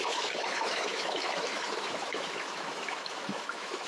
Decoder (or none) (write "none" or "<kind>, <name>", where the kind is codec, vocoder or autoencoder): autoencoder, DAC-VAE